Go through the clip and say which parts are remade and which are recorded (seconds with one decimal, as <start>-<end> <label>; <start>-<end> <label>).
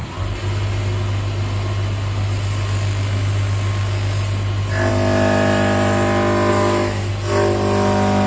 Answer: 0.0-6.5 recorded; 6.5-7.1 remade; 7.1-8.3 recorded